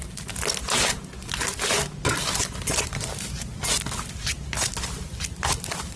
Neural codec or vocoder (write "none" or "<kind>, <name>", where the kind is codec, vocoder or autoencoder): none